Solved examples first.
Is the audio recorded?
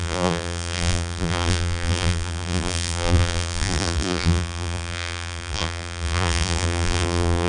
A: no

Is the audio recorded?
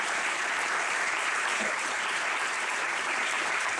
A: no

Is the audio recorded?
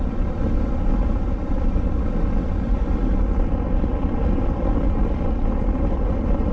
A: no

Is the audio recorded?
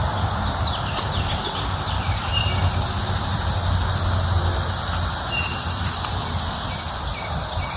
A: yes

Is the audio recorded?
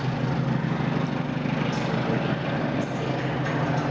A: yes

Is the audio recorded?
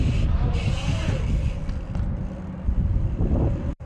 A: yes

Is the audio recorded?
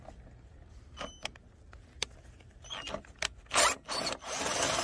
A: yes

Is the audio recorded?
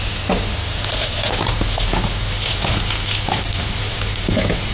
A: yes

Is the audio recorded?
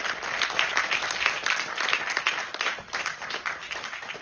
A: yes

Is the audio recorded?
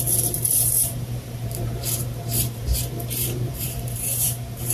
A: no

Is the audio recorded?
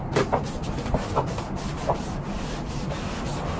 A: yes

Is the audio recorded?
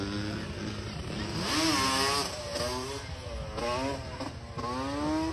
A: yes